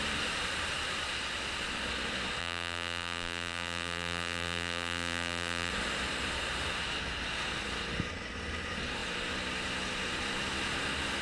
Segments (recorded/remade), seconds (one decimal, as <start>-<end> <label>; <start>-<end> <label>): 0.0-2.4 recorded; 2.4-5.7 remade; 5.7-11.2 recorded